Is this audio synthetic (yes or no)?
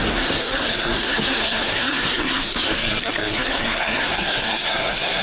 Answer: yes